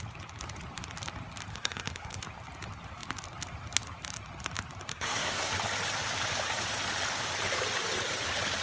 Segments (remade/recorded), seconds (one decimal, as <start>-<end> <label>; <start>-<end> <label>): 0.0-1.5 recorded; 1.5-2.2 remade; 2.2-4.9 recorded; 4.9-5.5 remade; 5.5-8.6 recorded